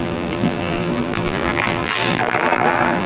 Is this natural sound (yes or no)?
no